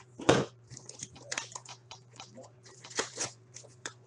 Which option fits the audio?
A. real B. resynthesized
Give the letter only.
B